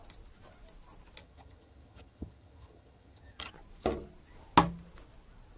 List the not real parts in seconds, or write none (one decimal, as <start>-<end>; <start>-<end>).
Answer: 1.2-3.5